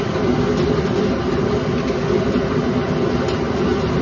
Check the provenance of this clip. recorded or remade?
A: recorded